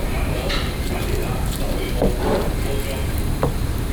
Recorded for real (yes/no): no